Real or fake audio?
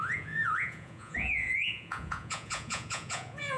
fake